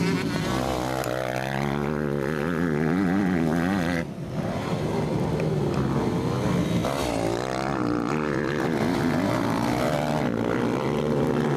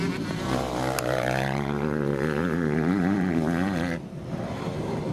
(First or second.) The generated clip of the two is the second